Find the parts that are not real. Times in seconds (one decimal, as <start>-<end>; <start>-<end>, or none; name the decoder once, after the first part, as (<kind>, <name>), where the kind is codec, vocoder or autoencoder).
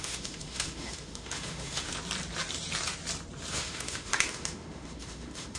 0.0-1.9 (autoencoder, DAC-VAE); 3.5-5.6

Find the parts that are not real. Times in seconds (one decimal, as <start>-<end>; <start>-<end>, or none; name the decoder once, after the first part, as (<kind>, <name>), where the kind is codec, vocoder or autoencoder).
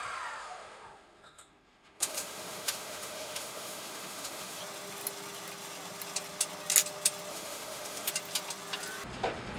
0.4-4.6 (autoencoder, DAC-VAE); 7.3-8.1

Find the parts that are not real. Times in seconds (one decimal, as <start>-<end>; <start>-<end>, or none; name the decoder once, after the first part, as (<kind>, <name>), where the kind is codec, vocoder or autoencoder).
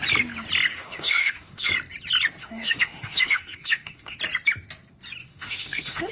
0.7-1.7 (autoencoder, DAC-VAE); 2.4-4.2; 5.2-6.1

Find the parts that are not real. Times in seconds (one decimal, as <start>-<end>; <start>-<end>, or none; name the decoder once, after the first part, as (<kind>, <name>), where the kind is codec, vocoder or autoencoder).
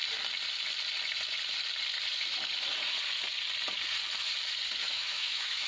4.8-5.7 (autoencoder, DAC-VAE)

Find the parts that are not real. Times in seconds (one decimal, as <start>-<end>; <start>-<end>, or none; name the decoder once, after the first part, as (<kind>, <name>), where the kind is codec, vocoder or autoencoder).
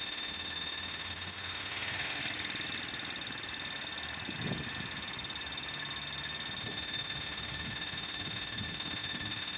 0.0-2.2 (autoencoder, DAC-VAE); 6.6-9.6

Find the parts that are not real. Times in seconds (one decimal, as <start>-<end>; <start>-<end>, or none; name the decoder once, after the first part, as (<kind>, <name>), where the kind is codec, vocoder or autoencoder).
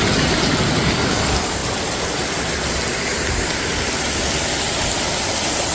none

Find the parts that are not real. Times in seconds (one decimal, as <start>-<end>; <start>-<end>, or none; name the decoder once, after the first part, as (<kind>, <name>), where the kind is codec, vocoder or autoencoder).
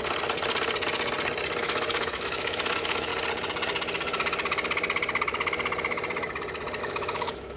1.6-3.1 (autoencoder, DAC-VAE); 6.8-7.6